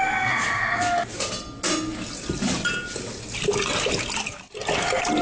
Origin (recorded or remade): recorded